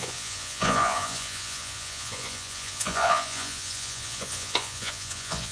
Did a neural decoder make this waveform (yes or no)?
yes